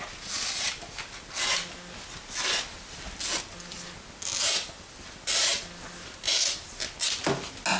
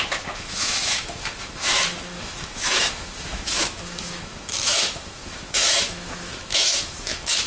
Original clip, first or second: first